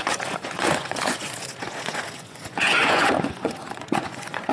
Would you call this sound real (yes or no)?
no